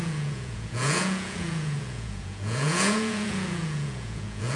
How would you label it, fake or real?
fake